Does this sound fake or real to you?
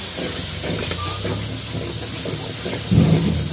real